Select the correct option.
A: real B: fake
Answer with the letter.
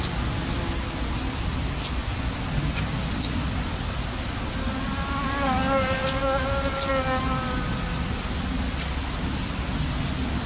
A